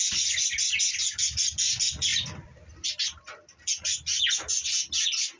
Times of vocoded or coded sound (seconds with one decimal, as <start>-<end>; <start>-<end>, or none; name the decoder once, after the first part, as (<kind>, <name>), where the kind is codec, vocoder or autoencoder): 2.1-2.9 (vocoder, BigVGAN v2)